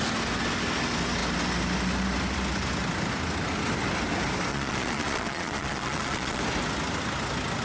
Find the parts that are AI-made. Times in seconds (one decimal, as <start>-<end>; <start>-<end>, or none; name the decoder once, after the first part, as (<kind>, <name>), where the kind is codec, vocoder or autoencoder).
4.5-6.4 (vocoder, Vocos)